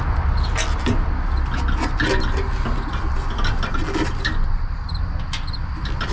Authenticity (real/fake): real